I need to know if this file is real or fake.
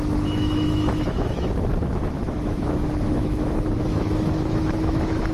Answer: fake